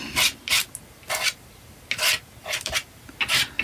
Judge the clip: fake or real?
real